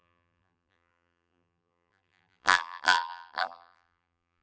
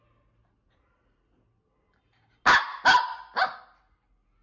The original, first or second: second